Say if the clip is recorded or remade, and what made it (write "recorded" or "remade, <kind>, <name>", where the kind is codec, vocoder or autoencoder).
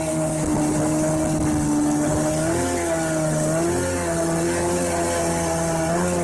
recorded